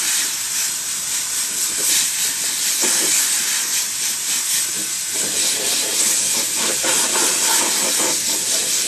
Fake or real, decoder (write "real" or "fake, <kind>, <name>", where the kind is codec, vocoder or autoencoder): real